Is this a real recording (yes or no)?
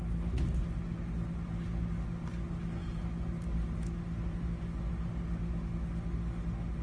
yes